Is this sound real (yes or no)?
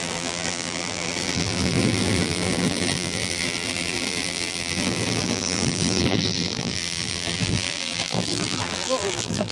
no